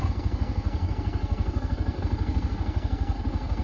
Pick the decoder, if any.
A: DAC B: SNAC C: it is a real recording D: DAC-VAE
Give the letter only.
B